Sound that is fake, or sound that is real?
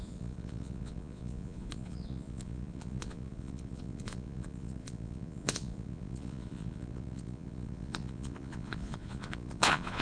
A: fake